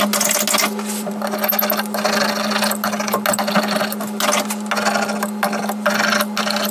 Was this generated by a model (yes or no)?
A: no